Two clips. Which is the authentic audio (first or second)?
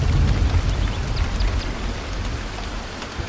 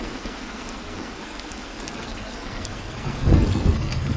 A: first